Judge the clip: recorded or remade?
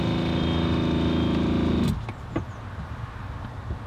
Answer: recorded